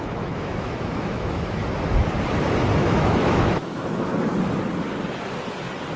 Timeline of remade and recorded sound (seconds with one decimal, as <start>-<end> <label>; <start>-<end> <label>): 0.0-1.6 remade; 1.6-2.8 recorded; 2.8-4.1 remade; 4.1-6.0 recorded